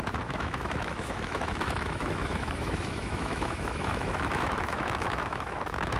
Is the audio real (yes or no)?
no